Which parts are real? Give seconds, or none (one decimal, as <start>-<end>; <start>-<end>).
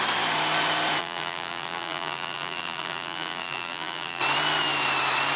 0.0-1.0; 4.2-5.4